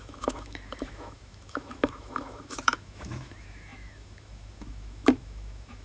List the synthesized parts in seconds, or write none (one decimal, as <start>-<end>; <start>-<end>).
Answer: 0.0-5.8